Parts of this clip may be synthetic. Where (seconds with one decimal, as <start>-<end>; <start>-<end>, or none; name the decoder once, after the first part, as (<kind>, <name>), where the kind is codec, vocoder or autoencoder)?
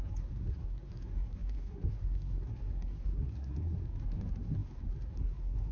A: 0.0-5.7 (codec, SNAC)